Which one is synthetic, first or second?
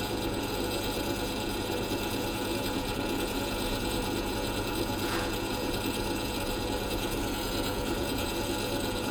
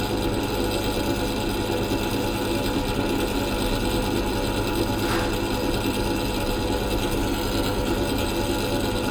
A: first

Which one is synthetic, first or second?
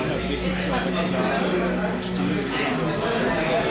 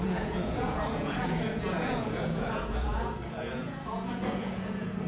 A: second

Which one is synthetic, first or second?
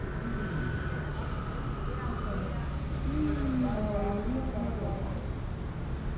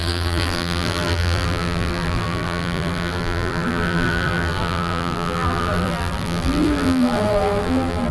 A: second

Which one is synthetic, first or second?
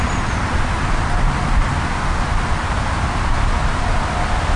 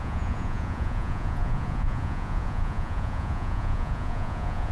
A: second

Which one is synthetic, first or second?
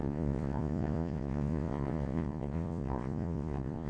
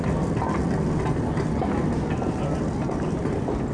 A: first